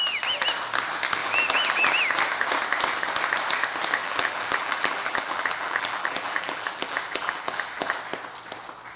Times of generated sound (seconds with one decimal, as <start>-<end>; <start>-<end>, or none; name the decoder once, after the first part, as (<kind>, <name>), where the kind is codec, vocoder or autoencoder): 1.2-1.9 (vocoder, BigVGAN v2); 4.0-8.0